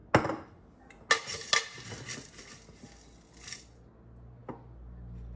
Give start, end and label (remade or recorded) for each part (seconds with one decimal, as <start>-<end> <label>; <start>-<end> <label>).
0.0-5.4 recorded